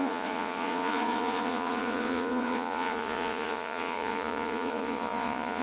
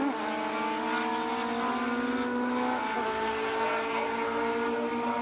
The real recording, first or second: second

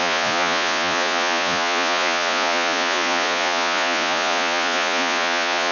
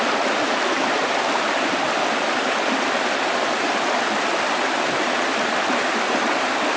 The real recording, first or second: second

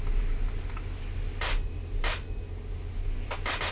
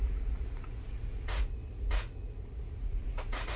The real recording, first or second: first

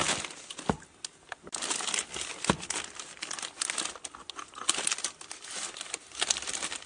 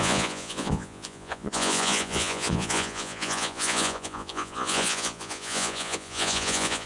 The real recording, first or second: first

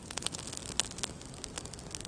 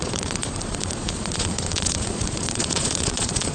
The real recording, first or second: first